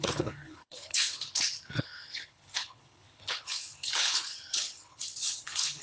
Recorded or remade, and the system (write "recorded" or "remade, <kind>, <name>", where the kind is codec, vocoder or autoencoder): remade, codec, HILCodec